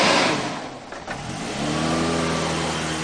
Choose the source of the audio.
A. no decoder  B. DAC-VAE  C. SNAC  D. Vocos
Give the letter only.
A